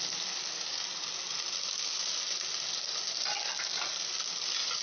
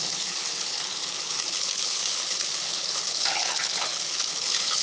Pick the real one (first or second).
first